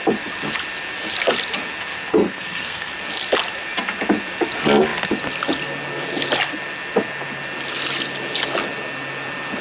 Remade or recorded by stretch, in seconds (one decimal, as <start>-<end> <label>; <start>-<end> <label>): 0.0-2.1 recorded; 2.1-2.9 remade; 2.9-9.6 recorded